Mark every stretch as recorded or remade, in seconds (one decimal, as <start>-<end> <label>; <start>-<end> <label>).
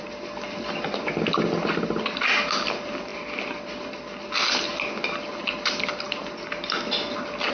0.0-7.5 recorded